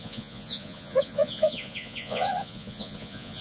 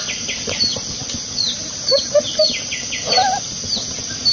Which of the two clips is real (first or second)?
second